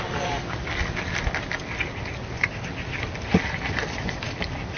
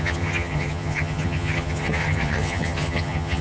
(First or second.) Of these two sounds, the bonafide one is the first